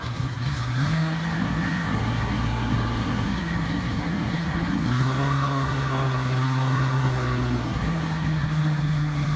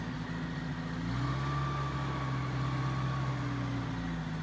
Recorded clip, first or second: second